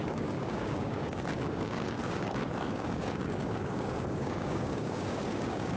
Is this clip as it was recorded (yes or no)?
no